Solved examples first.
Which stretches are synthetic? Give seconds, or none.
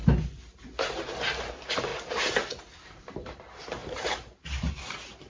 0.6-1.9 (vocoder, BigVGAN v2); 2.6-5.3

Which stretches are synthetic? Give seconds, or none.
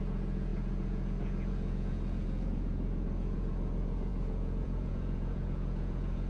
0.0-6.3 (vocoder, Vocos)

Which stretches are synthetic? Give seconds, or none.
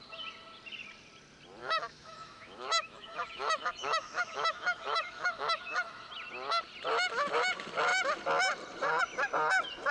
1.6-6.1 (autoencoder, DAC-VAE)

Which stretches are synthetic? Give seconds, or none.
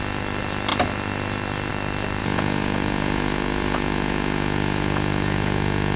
2.2-6.0 (vocoder, Vocos)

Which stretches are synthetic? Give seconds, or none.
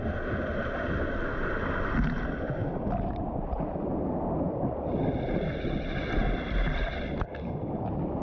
none